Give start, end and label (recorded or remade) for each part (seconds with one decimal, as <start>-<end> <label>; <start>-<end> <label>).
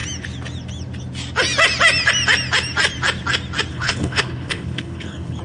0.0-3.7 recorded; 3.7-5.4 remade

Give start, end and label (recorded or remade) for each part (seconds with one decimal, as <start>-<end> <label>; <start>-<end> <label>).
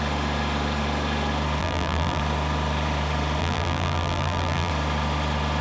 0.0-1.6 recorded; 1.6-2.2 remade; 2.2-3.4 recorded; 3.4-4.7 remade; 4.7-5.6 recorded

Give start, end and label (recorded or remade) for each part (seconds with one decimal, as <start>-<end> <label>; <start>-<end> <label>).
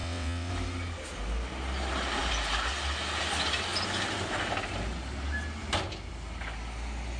0.0-0.5 remade; 0.5-7.2 recorded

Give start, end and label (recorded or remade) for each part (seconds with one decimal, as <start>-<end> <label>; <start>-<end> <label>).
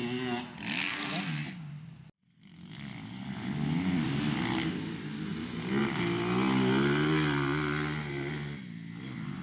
0.0-9.4 recorded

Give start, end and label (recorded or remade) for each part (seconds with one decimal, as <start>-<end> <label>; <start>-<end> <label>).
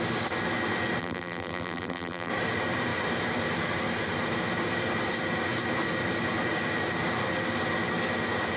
0.0-1.0 recorded; 1.0-2.3 remade; 2.3-8.6 recorded